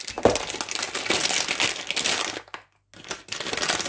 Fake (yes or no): no